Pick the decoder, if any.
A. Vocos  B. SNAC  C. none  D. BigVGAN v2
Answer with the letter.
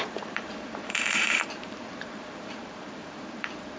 D